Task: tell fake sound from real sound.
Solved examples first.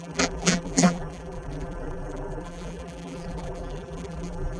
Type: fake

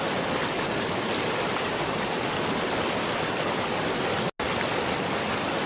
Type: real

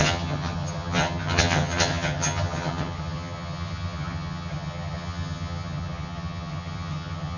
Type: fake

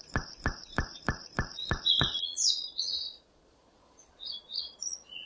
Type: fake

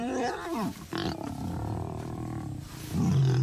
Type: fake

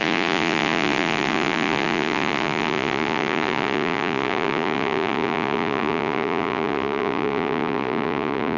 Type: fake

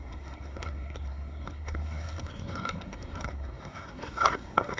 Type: fake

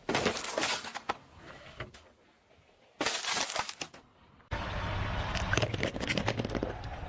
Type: real